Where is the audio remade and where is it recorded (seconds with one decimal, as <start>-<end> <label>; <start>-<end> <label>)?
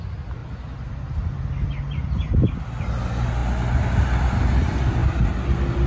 0.0-5.9 recorded